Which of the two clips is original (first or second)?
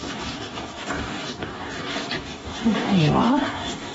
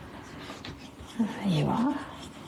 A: second